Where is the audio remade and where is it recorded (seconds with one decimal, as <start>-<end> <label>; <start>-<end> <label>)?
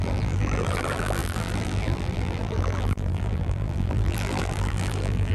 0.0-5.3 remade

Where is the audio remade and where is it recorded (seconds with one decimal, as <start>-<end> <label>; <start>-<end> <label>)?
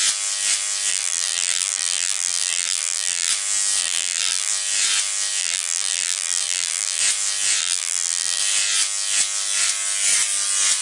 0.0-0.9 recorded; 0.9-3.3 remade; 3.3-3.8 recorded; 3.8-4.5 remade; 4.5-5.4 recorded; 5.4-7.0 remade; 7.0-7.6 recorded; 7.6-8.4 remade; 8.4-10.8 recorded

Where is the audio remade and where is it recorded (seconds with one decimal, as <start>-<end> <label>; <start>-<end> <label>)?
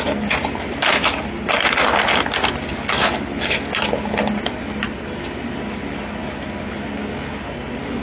0.0-8.0 recorded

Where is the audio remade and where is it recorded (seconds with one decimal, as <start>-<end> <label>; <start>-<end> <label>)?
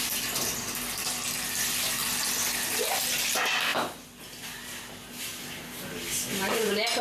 0.0-7.0 recorded